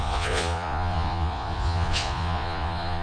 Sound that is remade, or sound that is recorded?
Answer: remade